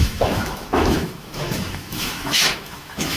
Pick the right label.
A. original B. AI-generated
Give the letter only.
B